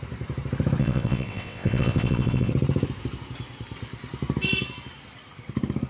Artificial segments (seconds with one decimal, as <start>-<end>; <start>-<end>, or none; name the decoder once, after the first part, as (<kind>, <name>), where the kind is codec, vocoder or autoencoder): 0.8-2.5 (vocoder, WaveNeXt)